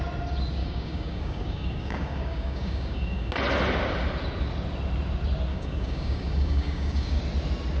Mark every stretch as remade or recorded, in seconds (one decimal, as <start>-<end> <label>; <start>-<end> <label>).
0.0-0.6 recorded; 0.6-3.3 remade; 3.3-5.5 recorded; 5.5-7.2 remade; 7.2-7.8 recorded

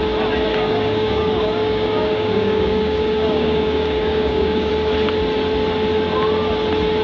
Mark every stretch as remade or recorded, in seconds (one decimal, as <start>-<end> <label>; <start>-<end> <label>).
0.0-0.5 recorded; 0.5-4.7 remade; 4.7-7.0 recorded

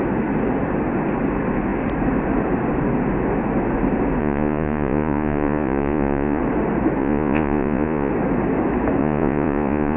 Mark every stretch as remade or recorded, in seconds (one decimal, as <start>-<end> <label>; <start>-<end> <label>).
0.0-4.2 recorded; 4.2-6.4 remade; 6.4-7.0 recorded; 7.0-8.1 remade; 8.1-9.0 recorded; 9.0-10.0 remade

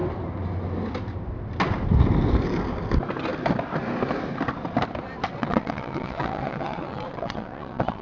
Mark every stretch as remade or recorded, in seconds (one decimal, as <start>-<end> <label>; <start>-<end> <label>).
0.0-5.4 recorded; 5.4-8.0 remade